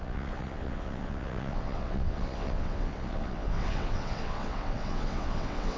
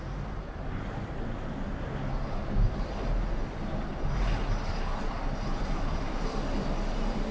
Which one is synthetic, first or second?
first